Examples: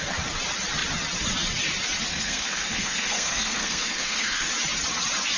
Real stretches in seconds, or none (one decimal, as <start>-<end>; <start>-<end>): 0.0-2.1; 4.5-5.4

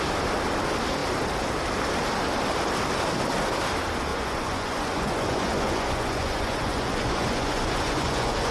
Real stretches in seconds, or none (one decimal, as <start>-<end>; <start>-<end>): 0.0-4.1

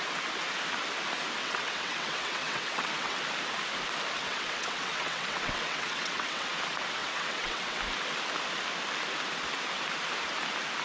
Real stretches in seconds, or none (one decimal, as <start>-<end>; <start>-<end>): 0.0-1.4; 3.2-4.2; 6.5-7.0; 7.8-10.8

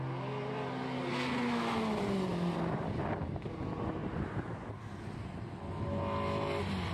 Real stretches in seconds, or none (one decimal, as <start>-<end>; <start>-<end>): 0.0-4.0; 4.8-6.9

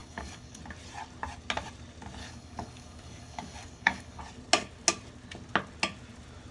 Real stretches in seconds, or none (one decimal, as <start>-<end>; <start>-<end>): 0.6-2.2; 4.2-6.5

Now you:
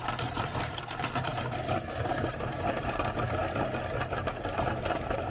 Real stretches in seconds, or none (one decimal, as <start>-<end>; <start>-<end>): 3.4-4.1